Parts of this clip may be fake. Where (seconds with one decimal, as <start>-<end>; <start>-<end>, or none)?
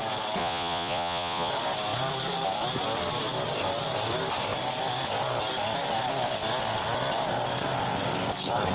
0.4-1.5